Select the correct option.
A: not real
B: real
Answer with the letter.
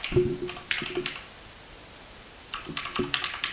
B